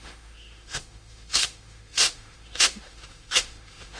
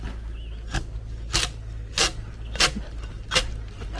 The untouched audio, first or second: second